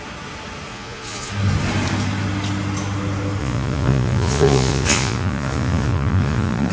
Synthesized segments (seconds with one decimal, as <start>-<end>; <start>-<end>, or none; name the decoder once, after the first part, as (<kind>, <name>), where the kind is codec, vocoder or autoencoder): 0.7-1.3 (vocoder, Vocos); 3.4-6.7